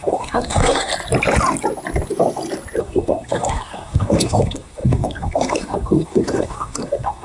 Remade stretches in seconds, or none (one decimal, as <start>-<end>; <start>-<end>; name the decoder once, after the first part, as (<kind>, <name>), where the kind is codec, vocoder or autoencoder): 0.0-0.9 (codec, SNAC); 2.8-7.2